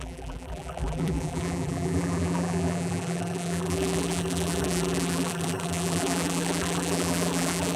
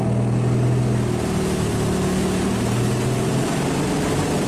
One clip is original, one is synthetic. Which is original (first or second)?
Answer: second